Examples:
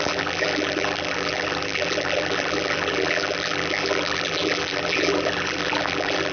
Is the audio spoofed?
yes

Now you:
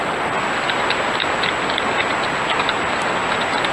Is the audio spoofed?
no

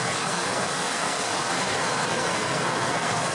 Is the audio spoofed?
yes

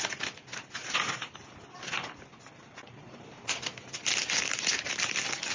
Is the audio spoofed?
no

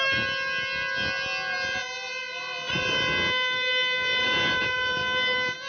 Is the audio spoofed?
no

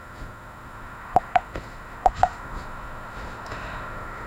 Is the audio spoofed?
yes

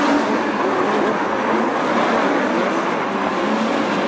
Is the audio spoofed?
no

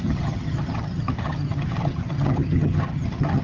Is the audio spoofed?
yes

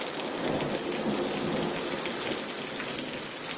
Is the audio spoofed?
no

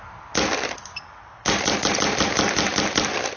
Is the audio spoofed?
no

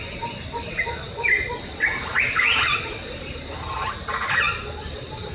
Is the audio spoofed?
no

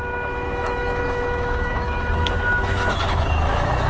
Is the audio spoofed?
yes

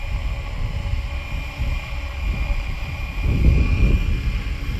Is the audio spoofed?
no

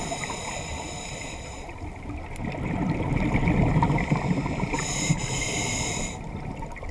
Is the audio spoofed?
no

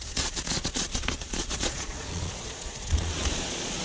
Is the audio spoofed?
yes